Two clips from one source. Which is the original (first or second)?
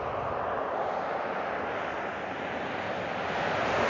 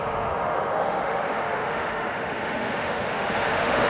first